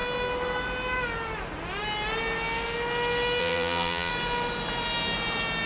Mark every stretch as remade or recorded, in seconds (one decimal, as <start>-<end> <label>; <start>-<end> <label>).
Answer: 0.0-3.4 recorded; 3.4-4.1 remade; 4.1-5.7 recorded